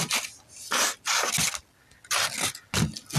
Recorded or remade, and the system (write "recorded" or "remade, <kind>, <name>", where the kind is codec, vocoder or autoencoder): recorded